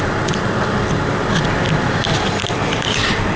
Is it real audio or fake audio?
fake